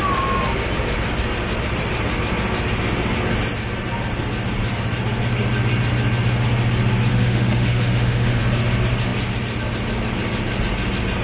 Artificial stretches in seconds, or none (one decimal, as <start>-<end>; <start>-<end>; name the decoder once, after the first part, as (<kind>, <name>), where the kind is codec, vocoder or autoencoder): 7.1-8.4 (autoencoder, DAC-VAE)